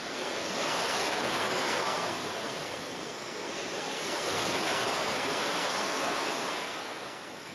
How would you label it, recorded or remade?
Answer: remade